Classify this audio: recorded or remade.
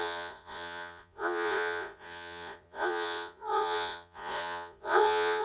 remade